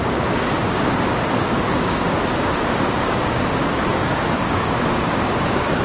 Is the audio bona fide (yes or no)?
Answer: no